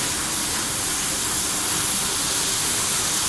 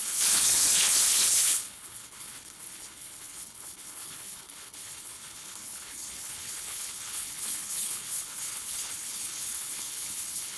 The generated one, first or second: second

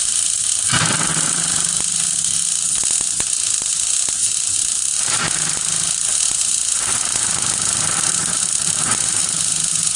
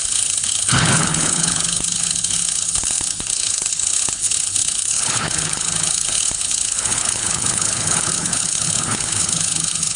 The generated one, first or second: second